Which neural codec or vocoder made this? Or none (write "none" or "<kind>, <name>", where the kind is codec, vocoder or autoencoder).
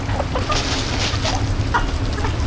none